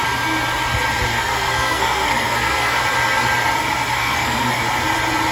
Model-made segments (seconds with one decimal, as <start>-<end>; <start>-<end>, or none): 1.1-2.8; 3.9-4.6